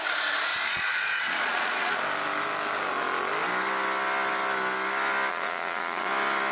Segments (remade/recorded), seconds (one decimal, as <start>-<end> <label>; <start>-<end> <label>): 0.0-0.5 recorded; 0.5-2.0 remade; 2.0-5.3 recorded; 5.3-6.1 remade; 6.1-6.5 recorded